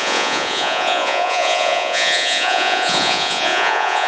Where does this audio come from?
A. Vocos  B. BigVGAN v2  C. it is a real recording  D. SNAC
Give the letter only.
A